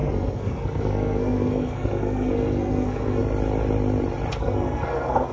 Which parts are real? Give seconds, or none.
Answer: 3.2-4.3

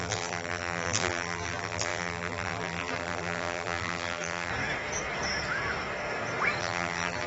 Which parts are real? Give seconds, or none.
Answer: 4.5-6.6

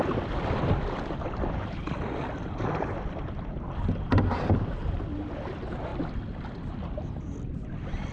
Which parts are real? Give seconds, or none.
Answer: 0.0-8.1

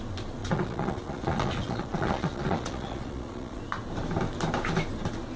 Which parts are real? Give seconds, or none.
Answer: 0.0-0.4; 3.6-5.4